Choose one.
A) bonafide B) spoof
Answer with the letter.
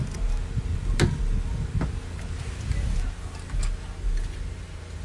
A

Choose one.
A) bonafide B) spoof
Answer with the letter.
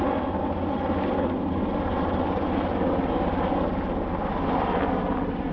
A